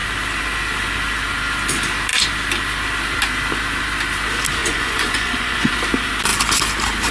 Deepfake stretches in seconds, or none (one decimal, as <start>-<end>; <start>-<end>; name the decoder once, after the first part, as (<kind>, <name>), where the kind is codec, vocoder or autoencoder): 4.6-5.7 (vocoder, Vocos)

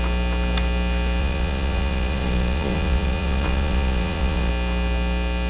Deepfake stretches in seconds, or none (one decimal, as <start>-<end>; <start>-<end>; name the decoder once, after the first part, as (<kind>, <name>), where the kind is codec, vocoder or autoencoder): 1.2-4.5 (vocoder, Vocos)

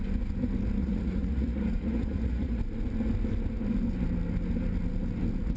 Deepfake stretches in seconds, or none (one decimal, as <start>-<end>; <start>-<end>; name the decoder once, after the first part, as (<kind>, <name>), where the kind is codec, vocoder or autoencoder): 0.8-2.6 (vocoder, Vocos)

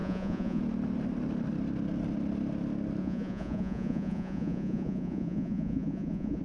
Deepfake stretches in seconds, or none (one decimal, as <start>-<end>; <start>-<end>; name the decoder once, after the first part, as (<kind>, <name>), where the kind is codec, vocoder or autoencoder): 0.0-0.6 (vocoder, Vocos); 3.0-6.4

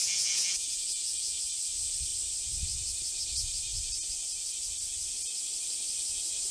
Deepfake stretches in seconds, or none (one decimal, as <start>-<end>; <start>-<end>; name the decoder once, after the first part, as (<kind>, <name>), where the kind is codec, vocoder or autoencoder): 0.0-1.4 (vocoder, Vocos)

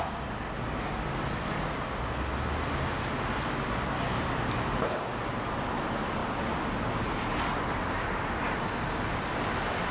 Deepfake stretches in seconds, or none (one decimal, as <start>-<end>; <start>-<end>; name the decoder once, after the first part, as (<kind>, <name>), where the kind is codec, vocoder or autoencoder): none